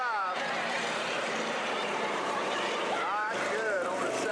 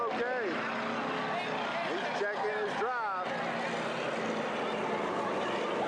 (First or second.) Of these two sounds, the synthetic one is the first